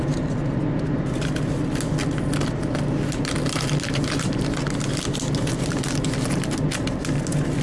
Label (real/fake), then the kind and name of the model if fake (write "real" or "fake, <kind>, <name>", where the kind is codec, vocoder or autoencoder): real